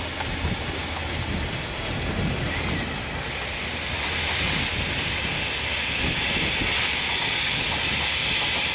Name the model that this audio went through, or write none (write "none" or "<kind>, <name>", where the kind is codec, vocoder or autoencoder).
none